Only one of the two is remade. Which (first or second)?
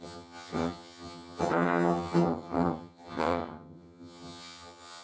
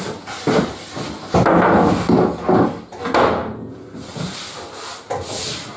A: first